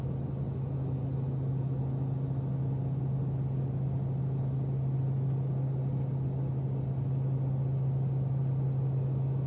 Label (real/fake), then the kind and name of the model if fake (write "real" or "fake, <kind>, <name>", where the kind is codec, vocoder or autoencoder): real